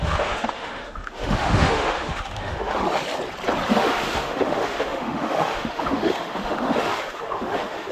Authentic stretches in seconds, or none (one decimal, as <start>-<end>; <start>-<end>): 2.8-3.7